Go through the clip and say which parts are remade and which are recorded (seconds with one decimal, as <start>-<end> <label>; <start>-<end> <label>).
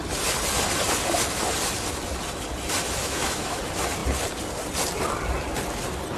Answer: 0.0-3.0 recorded; 3.0-3.6 remade; 3.6-6.2 recorded